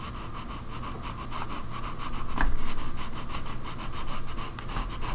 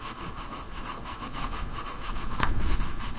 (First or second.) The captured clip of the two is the first